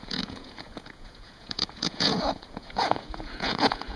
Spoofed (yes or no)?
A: yes